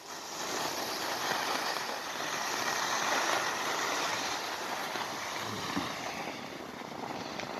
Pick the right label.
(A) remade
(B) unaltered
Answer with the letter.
B